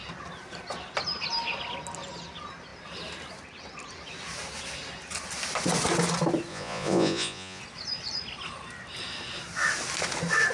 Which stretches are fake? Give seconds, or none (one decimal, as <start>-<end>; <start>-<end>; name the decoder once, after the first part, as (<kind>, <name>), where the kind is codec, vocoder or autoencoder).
6.5-7.6 (vocoder, Vocos)